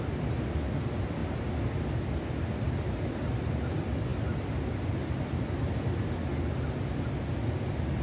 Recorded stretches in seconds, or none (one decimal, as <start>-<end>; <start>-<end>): 0.0-8.0